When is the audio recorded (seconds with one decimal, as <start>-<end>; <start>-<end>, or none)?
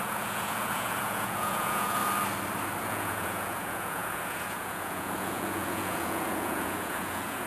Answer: 2.0-2.8